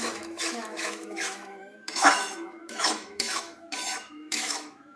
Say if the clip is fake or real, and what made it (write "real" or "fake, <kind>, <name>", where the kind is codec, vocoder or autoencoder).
fake, autoencoder, DAC-VAE